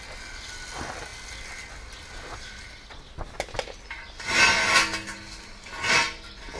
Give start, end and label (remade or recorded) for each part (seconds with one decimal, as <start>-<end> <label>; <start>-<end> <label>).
0.0-6.6 recorded